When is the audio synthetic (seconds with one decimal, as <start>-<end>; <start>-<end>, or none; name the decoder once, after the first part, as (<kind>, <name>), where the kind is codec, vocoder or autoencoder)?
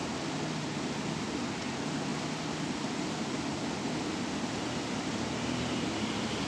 none